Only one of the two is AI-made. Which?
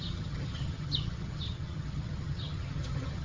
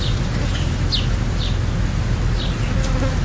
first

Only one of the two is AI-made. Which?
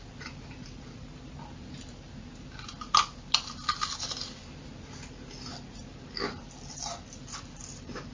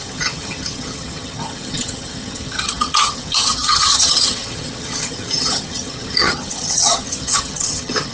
second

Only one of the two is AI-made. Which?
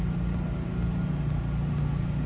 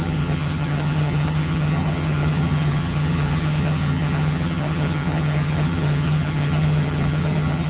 second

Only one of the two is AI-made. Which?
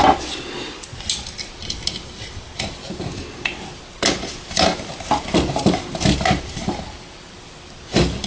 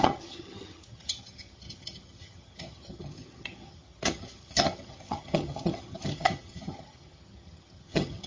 second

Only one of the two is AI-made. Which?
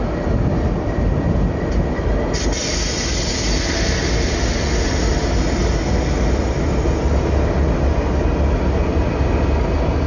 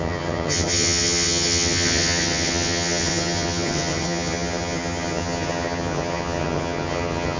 second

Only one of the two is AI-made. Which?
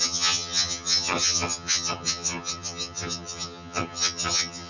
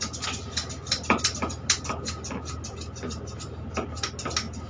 first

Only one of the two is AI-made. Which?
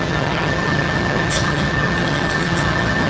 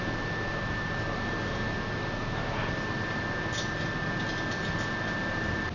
first